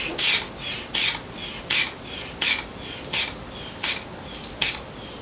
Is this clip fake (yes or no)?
no